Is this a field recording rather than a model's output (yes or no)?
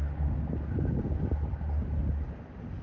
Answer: yes